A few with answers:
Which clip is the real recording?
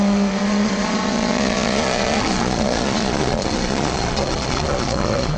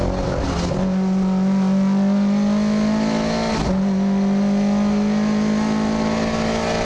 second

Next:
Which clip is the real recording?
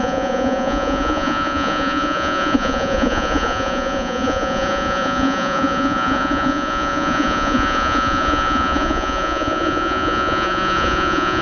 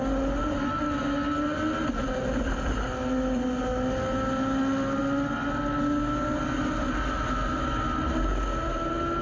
second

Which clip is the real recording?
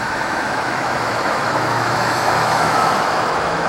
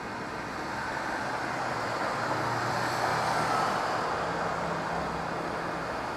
second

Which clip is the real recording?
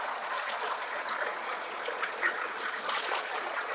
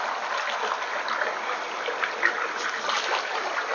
second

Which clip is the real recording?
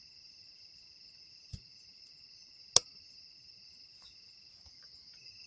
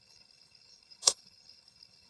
first